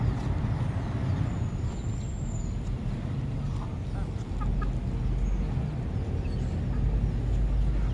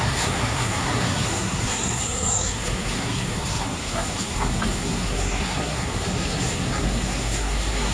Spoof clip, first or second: second